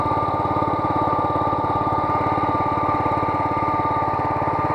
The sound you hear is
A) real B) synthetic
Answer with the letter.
A